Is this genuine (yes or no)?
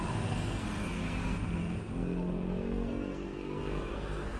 no